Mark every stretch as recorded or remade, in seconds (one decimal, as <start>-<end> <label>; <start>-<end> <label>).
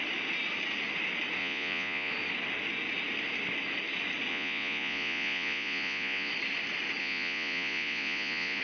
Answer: 0.0-1.4 recorded; 1.4-2.1 remade; 2.1-4.3 recorded; 4.3-6.3 remade; 6.3-7.0 recorded; 7.0-8.6 remade